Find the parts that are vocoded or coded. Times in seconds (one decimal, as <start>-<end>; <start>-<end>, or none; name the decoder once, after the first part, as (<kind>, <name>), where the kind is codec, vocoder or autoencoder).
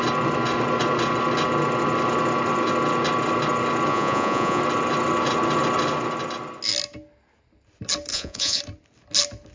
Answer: 3.9-4.6 (vocoder, Vocos); 8.1-8.6